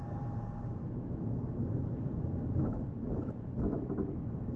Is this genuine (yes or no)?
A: no